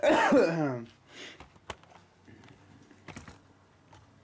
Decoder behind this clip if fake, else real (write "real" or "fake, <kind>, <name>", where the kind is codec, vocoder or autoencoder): real